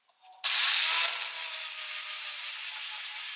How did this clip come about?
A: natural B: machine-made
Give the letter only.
A